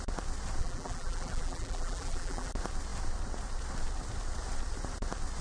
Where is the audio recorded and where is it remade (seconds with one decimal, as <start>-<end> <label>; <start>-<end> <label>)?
0.0-0.6 recorded; 0.6-2.5 remade; 2.5-5.4 recorded